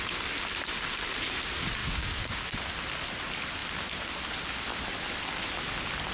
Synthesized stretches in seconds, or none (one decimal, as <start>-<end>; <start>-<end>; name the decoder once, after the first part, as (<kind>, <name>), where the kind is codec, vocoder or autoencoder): 1.8-2.4 (codec, DAC)